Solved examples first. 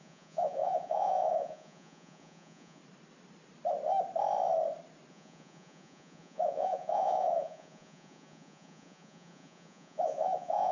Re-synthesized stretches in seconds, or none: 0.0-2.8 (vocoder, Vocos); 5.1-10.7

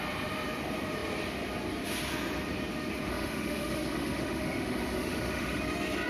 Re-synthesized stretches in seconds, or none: 3.1-5.6 (autoencoder, DAC-VAE)

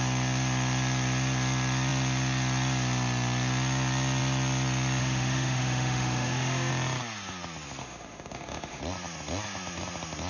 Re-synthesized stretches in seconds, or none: 5.0-6.7 (autoencoder, DAC-VAE); 7.8-8.8

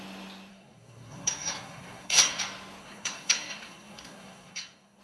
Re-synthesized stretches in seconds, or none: 0.5-2.4 (codec, SNAC); 2.8-5.0

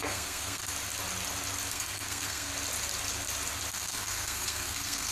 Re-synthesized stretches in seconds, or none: 0.0-0.7 (codec, SNAC); 1.7-2.5; 3.7-5.1